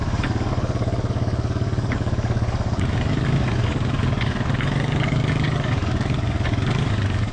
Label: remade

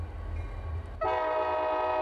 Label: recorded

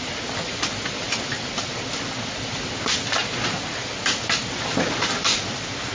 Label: recorded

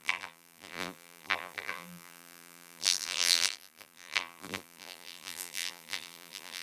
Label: remade